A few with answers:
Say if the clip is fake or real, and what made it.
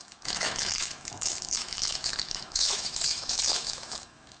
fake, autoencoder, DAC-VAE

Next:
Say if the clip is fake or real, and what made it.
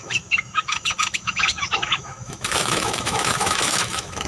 fake, autoencoder, DAC-VAE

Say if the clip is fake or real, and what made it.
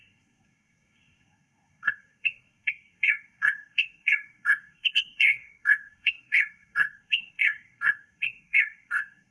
fake, codec, SNAC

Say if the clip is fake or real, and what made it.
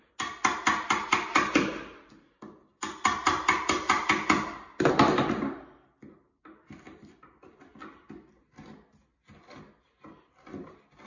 real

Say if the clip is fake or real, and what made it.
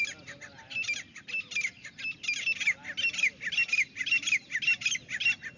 real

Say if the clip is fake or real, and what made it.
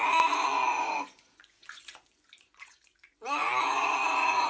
fake, vocoder, Vocos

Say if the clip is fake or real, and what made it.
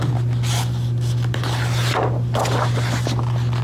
real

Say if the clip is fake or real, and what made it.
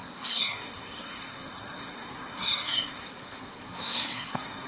fake, codec, SNAC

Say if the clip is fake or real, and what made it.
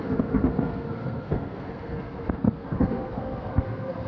fake, codec, SNAC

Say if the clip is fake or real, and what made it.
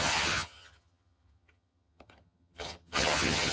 fake, vocoder, HiFi-GAN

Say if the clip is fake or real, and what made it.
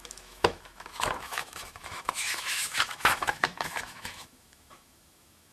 fake, autoencoder, DAC-VAE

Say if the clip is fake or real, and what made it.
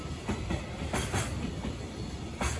real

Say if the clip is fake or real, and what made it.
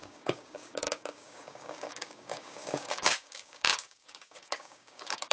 fake, codec, DAC